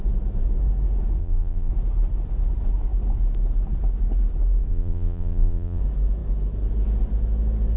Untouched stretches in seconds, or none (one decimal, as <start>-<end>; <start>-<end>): 0.0-1.2; 1.7-4.7; 5.8-7.8